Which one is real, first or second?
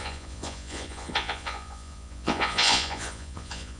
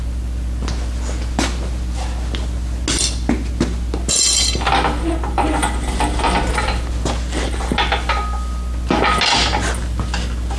second